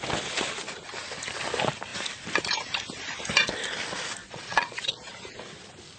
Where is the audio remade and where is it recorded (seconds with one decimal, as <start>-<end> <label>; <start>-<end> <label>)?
0.0-4.2 recorded; 4.2-5.1 remade; 5.1-6.0 recorded